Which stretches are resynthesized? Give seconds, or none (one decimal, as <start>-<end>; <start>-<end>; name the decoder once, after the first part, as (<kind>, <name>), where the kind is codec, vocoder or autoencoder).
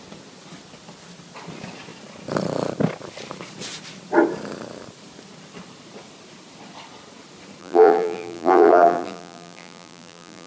7.6-10.5 (vocoder, BigVGAN v2)